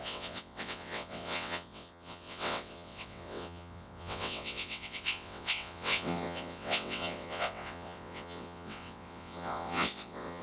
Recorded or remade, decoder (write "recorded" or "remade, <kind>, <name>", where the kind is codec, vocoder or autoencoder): remade, vocoder, WaveNeXt